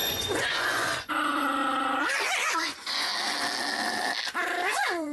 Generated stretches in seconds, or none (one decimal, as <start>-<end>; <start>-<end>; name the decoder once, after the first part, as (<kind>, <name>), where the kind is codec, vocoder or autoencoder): 0.0-1.6 (vocoder, Vocos); 2.4-3.1; 4.6-5.1